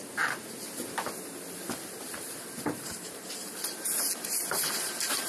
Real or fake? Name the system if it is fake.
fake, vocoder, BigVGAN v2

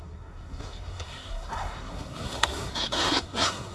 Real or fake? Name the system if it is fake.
fake, codec, SNAC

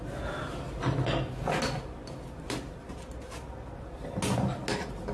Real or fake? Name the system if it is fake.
real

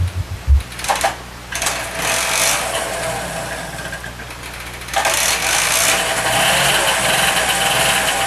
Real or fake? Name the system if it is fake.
real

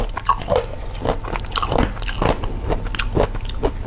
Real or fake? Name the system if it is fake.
real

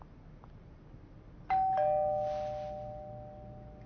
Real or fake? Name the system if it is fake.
real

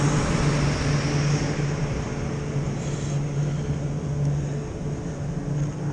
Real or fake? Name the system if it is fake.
real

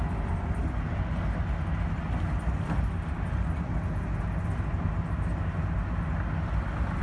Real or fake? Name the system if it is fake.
real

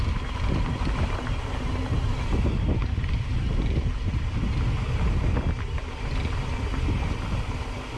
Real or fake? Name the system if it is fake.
real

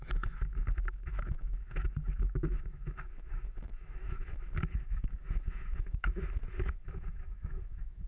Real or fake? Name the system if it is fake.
fake, autoencoder, DAC-VAE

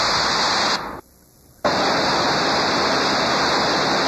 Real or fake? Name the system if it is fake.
real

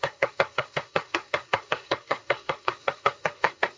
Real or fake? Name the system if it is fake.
fake, codec, SNAC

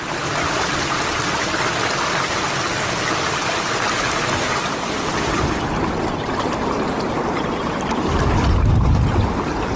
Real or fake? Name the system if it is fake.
real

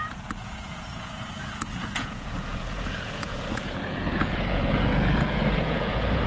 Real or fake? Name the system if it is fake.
fake, vocoder, Vocos